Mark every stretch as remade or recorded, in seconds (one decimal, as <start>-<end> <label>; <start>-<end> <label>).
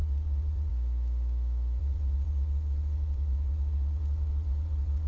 0.0-0.7 remade; 0.7-1.8 recorded; 1.8-5.1 remade